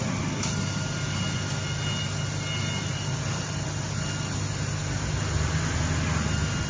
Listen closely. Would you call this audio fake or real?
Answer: real